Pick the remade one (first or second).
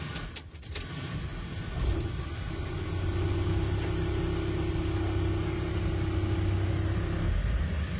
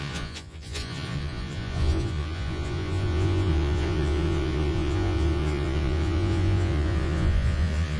second